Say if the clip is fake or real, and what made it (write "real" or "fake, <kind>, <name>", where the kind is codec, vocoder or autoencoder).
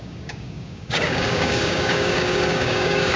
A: fake, codec, DAC